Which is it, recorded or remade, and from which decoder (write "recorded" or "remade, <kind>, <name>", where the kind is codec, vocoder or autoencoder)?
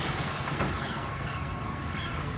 remade, codec, SNAC